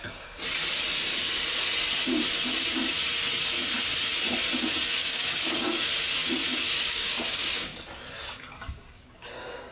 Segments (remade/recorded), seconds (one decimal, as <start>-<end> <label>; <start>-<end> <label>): 0.0-0.4 remade; 0.4-5.0 recorded; 5.0-5.9 remade; 5.9-6.8 recorded; 6.8-7.7 remade; 7.7-8.3 recorded; 8.3-9.7 remade